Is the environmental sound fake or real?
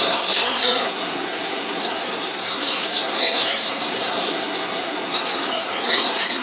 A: fake